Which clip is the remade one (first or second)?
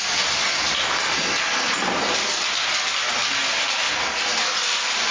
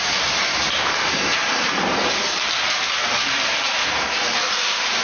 second